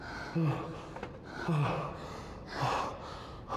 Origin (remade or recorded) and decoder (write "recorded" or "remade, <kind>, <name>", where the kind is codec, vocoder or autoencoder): recorded